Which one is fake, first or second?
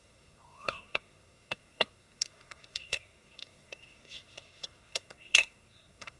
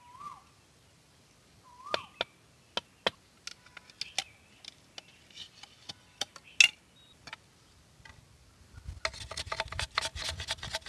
first